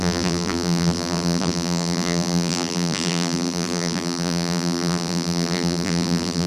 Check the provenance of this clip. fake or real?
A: fake